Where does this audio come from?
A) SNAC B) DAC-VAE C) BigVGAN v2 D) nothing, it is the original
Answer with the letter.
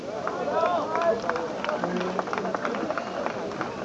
D